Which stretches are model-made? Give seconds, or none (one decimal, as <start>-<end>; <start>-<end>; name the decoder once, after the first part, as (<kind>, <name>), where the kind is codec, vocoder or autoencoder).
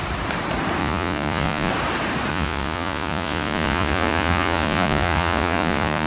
0.8-1.7 (vocoder, Vocos); 2.3-6.1